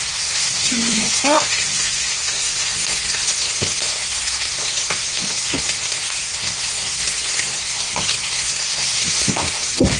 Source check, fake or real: fake